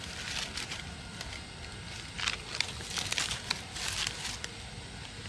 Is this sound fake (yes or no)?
no